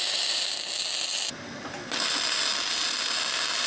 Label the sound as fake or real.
real